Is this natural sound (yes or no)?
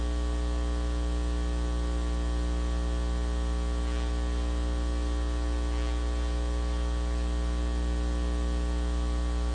yes